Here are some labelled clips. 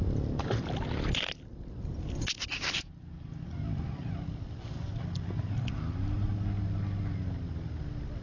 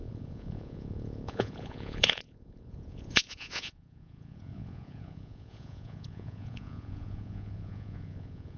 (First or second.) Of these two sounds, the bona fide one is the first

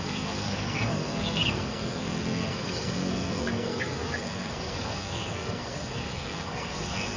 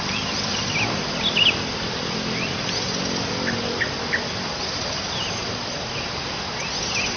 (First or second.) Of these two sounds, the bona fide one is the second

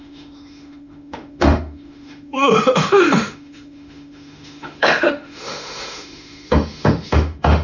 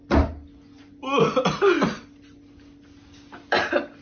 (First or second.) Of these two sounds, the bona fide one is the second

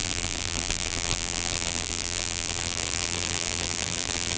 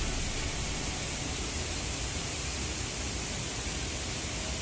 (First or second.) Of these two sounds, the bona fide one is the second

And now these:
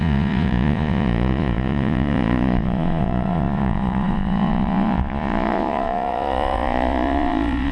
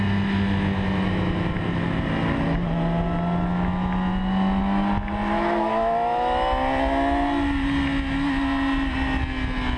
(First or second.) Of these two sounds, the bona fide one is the second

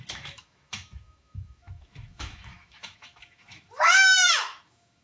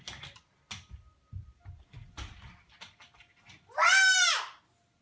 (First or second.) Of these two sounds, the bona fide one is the second